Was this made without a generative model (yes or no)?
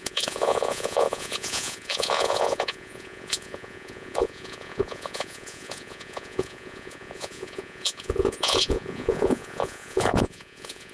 no